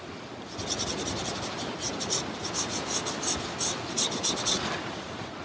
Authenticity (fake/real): real